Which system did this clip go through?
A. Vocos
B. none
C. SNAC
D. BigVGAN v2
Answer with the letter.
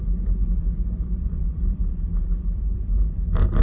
D